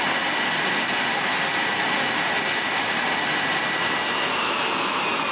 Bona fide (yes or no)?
yes